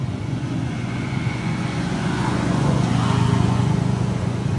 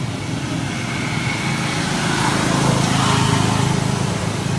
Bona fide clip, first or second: second